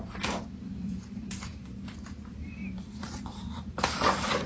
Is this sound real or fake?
fake